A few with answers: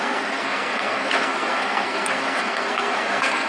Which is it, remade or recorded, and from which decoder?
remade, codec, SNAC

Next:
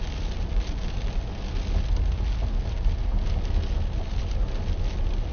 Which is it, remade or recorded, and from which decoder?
recorded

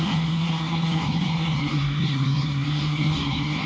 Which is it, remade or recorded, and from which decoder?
remade, codec, SNAC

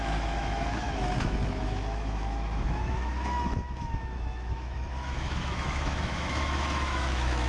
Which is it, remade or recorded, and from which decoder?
remade, autoencoder, DAC-VAE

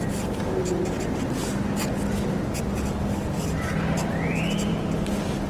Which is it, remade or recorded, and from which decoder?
recorded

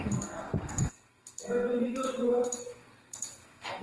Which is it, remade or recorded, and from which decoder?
remade, codec, SNAC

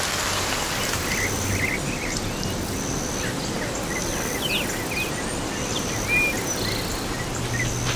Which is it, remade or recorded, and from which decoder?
recorded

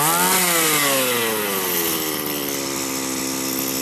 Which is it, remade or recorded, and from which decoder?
recorded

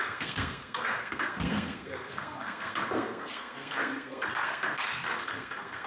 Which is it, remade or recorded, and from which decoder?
remade, codec, SNAC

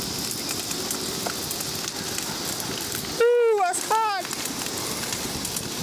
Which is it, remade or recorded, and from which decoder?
recorded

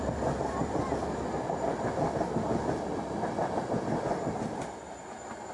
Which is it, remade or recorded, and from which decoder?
recorded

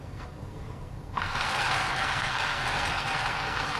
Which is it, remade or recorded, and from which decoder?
remade, codec, SNAC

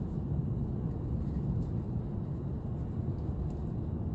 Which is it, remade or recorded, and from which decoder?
recorded